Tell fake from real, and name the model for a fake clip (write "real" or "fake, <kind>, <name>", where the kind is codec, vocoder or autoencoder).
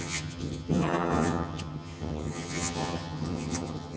fake, vocoder, HiFi-GAN